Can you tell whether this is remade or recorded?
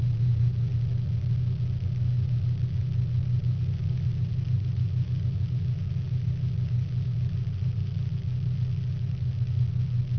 recorded